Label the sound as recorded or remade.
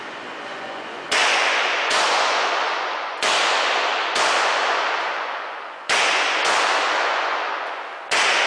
remade